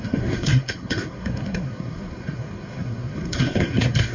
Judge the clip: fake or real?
fake